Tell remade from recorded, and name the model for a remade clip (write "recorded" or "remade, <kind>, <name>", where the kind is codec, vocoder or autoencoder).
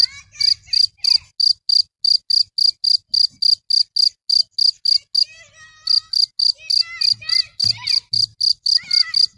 recorded